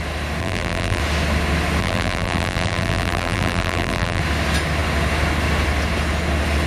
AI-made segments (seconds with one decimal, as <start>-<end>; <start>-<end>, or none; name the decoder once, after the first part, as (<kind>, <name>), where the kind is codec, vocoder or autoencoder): 0.4-1.0 (vocoder, BigVGAN v2); 1.8-4.2